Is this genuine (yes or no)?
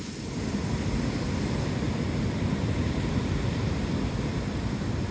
yes